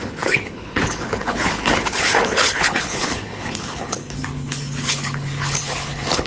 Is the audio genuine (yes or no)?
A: no